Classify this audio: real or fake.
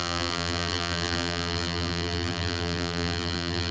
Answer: fake